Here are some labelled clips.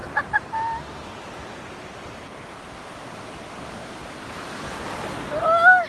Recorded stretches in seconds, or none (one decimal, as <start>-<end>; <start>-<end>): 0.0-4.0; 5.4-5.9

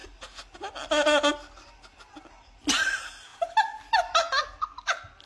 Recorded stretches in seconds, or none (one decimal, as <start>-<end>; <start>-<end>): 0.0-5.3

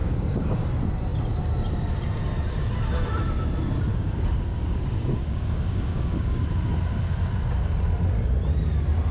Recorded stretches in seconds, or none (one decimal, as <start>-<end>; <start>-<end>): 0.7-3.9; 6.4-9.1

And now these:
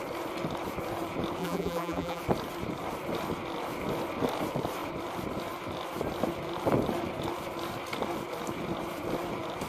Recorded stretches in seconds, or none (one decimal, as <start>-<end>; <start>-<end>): 0.0-1.4; 2.2-9.7